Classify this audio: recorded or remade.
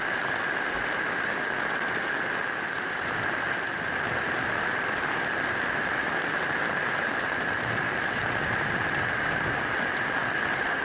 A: remade